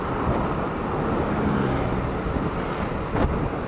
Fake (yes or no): no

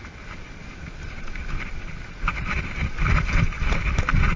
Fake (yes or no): no